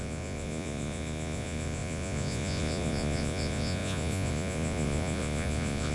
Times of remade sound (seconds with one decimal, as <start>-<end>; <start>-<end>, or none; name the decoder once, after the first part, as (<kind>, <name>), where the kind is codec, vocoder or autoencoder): 0.0-5.9 (vocoder, Vocos)